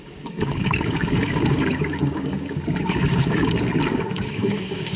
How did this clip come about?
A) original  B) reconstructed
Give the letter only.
B